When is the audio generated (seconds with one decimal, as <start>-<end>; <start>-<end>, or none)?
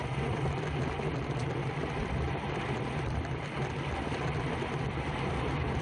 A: none